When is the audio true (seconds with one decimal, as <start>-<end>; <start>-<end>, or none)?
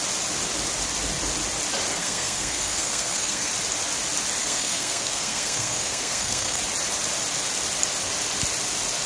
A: 0.0-1.9; 3.5-4.4; 6.6-9.1